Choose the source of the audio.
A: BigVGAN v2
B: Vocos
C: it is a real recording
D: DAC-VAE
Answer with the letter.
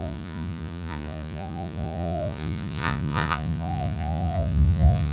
B